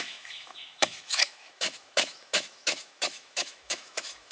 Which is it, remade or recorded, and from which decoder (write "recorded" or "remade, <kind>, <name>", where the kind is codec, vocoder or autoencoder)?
remade, autoencoder, DAC-VAE